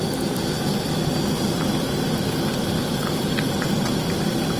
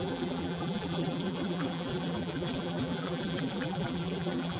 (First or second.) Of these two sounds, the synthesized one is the second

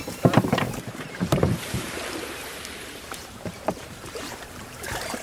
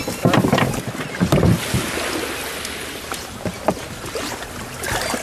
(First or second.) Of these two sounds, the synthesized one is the first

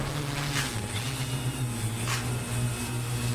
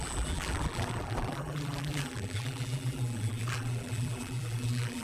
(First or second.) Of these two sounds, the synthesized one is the second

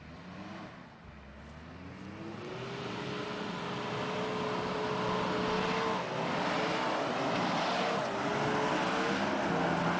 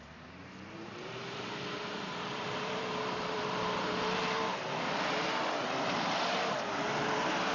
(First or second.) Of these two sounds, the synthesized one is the second